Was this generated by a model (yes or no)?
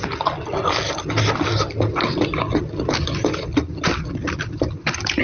no